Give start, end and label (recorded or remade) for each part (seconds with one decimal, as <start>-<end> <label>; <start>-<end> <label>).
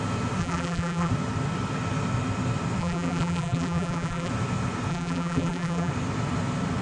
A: 0.0-0.4 recorded; 0.4-1.1 remade; 1.1-2.8 recorded; 2.8-4.3 remade; 4.3-4.9 recorded; 4.9-5.9 remade; 5.9-6.8 recorded